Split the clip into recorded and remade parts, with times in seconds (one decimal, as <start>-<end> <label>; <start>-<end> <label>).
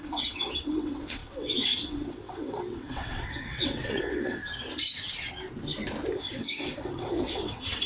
0.0-4.4 remade; 4.4-6.2 recorded; 6.2-7.9 remade